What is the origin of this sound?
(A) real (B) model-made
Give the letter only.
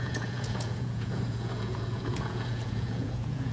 B